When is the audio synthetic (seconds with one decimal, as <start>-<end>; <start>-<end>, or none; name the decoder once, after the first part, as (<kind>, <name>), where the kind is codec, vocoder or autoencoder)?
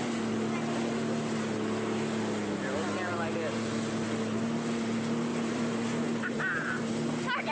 5.3-6.8 (vocoder, BigVGAN v2)